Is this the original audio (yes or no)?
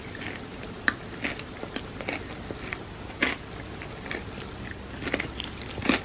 yes